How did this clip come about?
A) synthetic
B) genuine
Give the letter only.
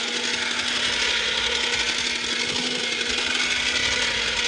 B